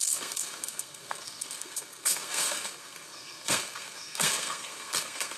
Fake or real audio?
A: fake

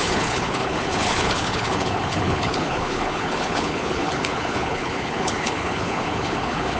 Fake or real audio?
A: fake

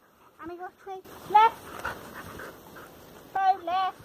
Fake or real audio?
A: real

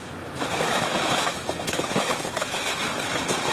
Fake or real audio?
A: fake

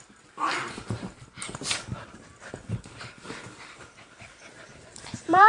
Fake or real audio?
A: fake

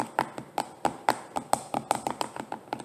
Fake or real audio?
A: real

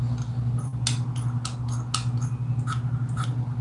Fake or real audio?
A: real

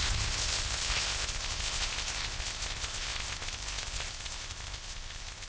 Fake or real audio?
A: fake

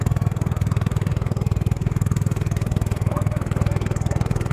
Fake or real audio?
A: fake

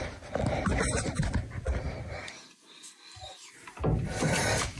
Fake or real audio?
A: fake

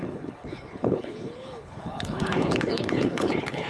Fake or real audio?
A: fake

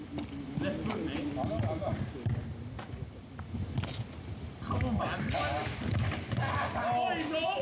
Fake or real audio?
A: real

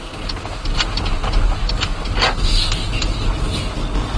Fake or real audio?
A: real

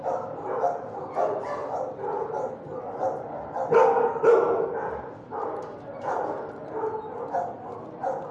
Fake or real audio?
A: real